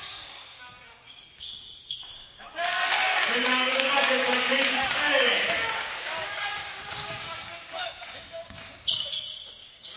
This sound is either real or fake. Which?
fake